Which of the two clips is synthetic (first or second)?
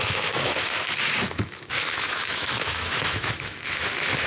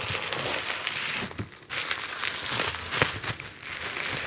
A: first